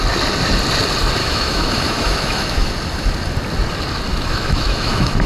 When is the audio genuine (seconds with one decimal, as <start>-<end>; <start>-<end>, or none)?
0.0-1.2; 2.7-4.1